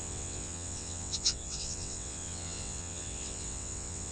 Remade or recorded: remade